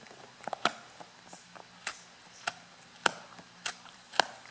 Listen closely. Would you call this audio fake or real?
real